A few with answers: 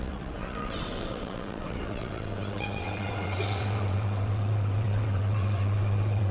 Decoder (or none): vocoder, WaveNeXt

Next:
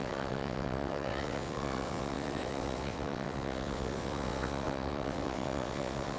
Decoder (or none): vocoder, WaveNeXt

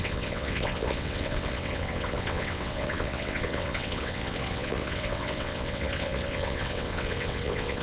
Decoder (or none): vocoder, WaveNeXt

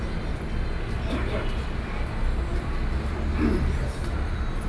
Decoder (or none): none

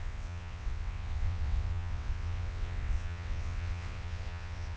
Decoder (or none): vocoder, WaveNeXt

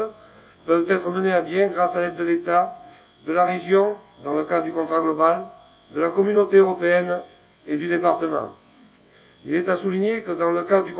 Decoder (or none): vocoder, WaveNeXt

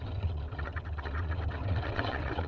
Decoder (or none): vocoder, WaveNeXt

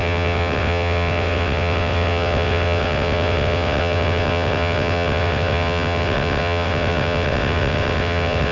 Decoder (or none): vocoder, WaveNeXt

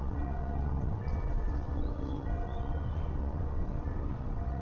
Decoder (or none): vocoder, WaveNeXt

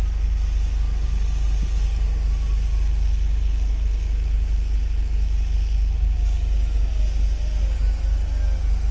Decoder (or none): none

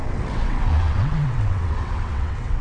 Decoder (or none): vocoder, WaveNeXt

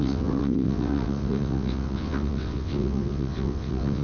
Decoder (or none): vocoder, WaveNeXt